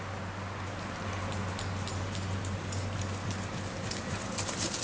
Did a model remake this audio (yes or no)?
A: no